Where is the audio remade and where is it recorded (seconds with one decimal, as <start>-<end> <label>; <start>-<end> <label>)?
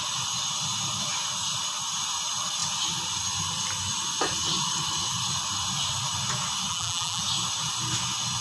0.0-6.7 recorded; 6.7-7.2 remade; 7.2-8.4 recorded